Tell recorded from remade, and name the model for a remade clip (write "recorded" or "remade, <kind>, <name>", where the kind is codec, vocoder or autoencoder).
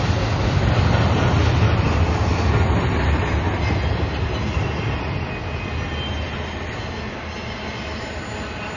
recorded